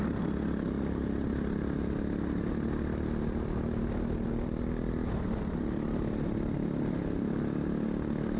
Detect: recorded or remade recorded